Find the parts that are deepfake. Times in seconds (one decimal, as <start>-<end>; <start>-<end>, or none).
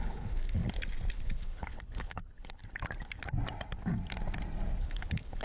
0.0-0.6; 1.1-2.6; 4.8-5.4